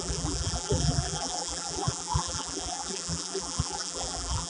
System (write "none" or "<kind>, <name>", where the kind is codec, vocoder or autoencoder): vocoder, BigVGAN v2